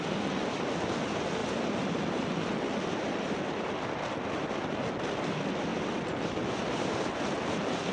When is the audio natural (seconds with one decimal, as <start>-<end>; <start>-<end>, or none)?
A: 0.0-1.4; 2.0-5.7; 6.9-7.9